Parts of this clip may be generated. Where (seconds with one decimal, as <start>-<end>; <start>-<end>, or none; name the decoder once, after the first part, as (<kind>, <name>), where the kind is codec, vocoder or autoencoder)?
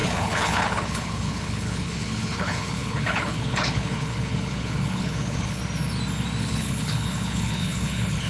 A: 0.0-5.6 (codec, HILCodec); 6.4-8.3